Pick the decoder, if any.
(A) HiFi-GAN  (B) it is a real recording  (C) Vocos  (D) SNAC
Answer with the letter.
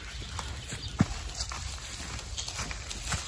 B